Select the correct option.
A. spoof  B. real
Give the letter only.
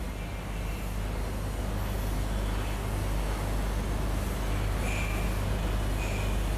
B